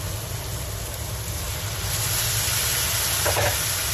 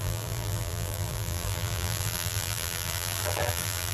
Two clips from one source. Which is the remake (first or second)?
second